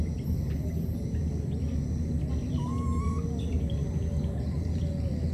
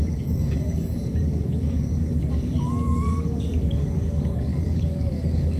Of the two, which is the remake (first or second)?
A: second